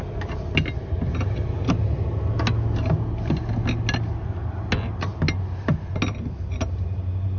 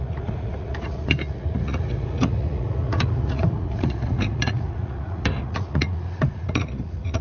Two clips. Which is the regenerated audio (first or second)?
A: second